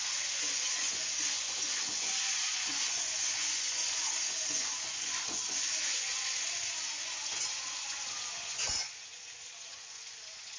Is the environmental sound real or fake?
fake